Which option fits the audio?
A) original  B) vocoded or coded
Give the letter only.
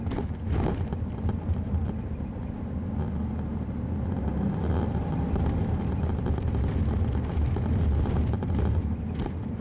A